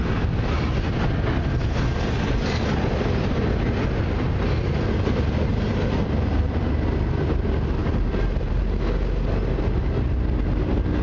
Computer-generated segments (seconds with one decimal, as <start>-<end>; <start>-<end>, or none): 5.5-6.4; 7.8-8.6

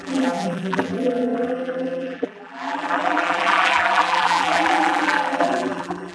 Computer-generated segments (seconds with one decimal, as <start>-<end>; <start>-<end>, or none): 0.0-6.1

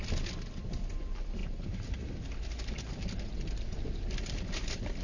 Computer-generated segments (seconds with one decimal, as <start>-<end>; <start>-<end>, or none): 1.4-1.9

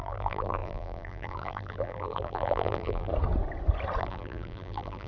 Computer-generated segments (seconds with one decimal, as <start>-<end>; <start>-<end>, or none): 0.0-3.1; 4.0-5.1

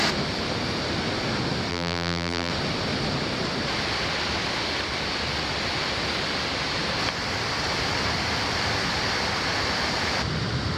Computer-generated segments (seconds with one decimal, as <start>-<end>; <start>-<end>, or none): 1.7-2.5

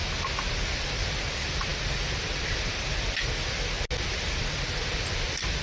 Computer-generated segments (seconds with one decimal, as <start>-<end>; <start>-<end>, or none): none